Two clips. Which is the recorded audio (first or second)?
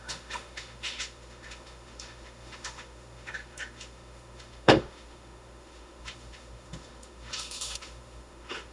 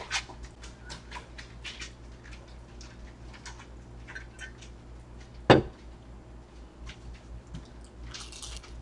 second